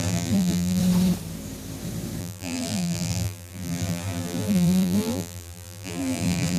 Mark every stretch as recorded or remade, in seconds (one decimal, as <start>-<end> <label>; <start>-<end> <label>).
0.0-0.8 remade; 0.8-2.2 recorded; 2.2-6.6 remade